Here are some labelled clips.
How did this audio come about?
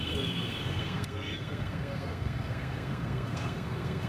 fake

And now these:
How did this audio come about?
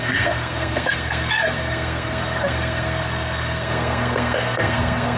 fake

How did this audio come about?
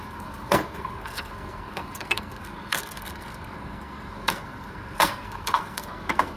fake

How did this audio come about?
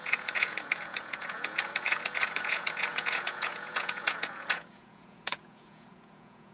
fake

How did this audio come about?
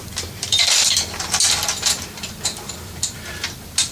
fake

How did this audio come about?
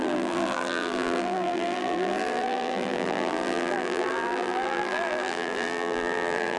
fake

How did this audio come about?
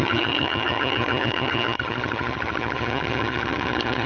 fake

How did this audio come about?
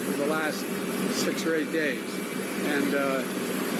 real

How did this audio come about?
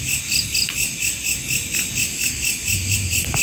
real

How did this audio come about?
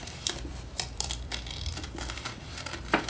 fake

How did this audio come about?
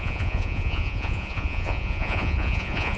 fake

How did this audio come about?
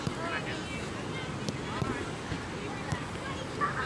real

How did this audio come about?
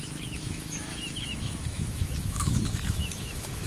fake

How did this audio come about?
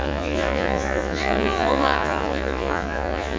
fake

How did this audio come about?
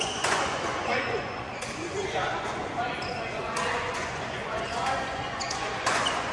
fake